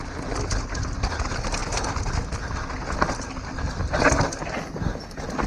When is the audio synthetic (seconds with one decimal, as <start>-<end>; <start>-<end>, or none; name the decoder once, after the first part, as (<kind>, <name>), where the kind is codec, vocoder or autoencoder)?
none